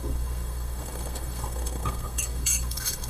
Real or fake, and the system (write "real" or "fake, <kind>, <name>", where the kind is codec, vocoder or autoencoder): fake, codec, SNAC